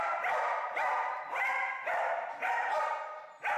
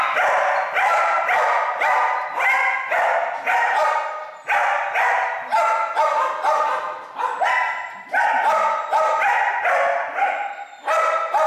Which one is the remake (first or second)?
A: first